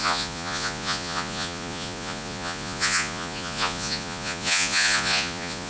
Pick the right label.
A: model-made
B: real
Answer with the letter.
A